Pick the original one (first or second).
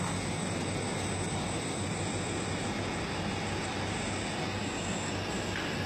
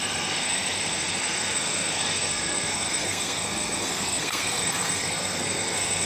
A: first